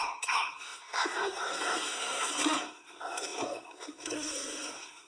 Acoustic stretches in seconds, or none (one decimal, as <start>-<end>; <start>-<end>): none